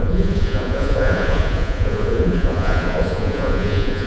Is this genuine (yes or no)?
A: no